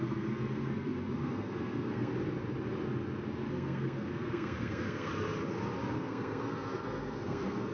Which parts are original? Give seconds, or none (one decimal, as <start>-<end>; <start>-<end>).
2.1-3.5; 5.1-5.9